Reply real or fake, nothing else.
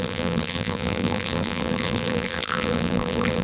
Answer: fake